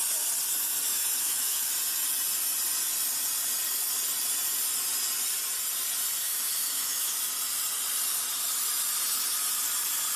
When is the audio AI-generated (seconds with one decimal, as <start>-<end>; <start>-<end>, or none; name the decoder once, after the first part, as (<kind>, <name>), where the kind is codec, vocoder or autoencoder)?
0.9-1.7 (autoencoder, DAC-VAE); 6.2-7.1